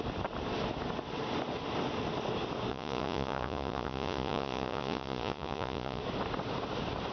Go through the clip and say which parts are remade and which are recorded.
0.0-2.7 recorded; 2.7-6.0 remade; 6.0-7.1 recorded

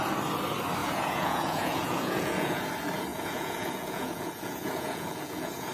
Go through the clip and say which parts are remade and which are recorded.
0.0-0.8 recorded; 0.8-2.7 remade; 2.7-3.1 recorded; 3.1-5.7 remade

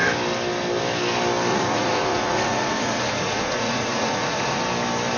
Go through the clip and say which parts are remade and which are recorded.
0.0-1.5 recorded; 1.5-4.6 remade; 4.6-5.2 recorded

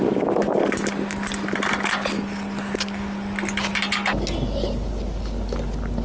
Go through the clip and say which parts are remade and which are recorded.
0.0-6.0 recorded

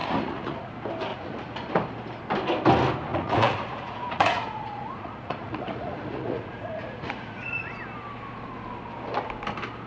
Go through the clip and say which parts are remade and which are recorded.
0.0-0.7 remade; 0.7-1.1 recorded; 1.1-1.7 remade; 1.7-3.1 recorded; 3.1-7.7 remade; 7.7-9.9 recorded

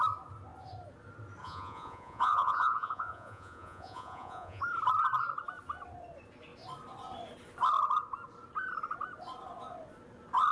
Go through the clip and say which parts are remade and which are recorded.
0.0-1.4 recorded; 1.4-4.6 remade; 4.6-10.5 recorded

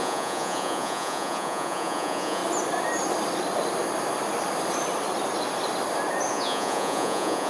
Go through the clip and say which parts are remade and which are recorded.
0.0-2.4 remade; 2.4-6.3 recorded; 6.3-7.5 remade

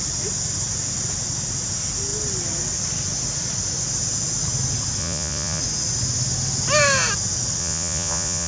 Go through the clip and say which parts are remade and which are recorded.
0.0-5.0 recorded; 5.0-5.6 remade; 5.6-7.6 recorded; 7.6-8.5 remade